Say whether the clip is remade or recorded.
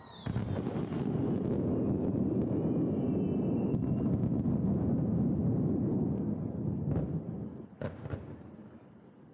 recorded